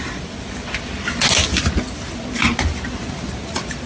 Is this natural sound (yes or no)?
yes